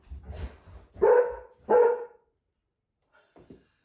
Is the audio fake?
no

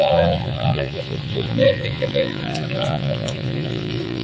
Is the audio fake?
yes